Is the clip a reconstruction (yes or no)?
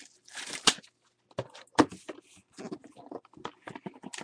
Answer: no